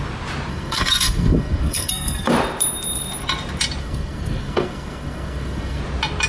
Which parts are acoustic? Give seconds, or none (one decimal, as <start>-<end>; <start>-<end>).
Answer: 0.0-0.5; 2.3-3.8; 5.8-6.3

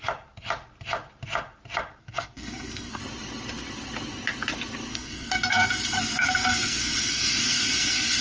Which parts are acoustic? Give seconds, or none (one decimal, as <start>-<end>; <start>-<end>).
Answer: 0.0-2.0; 3.0-4.9

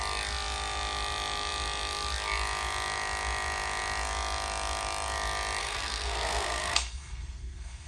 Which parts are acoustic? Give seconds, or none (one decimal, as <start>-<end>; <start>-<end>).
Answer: 0.0-5.6

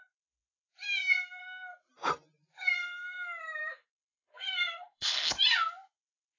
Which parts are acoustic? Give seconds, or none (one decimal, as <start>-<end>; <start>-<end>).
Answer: 0.0-1.4; 1.9-3.6; 5.3-6.4

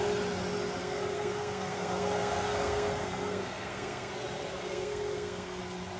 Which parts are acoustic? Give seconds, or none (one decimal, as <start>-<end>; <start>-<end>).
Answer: 0.0-0.8; 4.1-4.6; 5.6-6.0

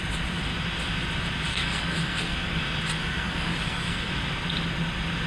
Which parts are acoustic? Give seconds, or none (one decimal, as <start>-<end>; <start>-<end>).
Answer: 0.0-1.5; 2.6-3.0; 4.1-5.3

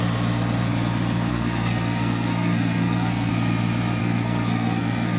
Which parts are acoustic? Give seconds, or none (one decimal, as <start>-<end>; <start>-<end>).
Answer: 0.0-1.3; 3.3-4.0

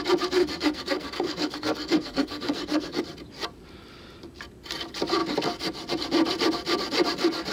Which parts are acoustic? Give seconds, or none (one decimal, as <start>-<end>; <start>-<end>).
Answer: 0.0-0.4; 3.0-7.5